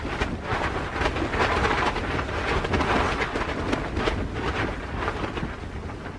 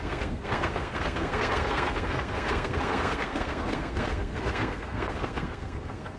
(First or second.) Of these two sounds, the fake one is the second